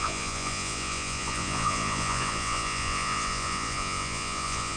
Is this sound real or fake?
fake